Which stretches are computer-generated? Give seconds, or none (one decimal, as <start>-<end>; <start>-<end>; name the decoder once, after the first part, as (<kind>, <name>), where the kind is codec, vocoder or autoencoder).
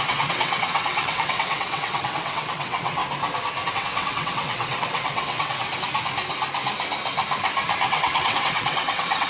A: 0.0-3.0 (vocoder, WaveNeXt); 3.7-5.7; 7.9-9.3